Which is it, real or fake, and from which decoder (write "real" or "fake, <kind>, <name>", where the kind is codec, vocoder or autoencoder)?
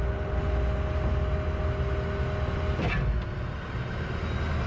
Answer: real